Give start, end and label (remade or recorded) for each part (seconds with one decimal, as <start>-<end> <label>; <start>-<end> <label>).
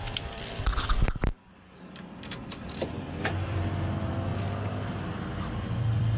0.0-4.3 remade; 4.3-5.8 recorded; 5.8-6.2 remade